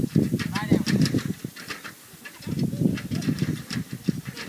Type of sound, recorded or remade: recorded